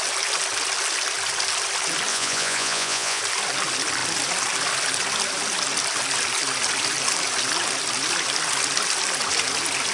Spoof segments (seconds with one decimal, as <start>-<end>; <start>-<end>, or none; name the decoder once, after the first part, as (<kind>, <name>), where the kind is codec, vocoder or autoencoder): 2.1-3.2 (vocoder, Vocos)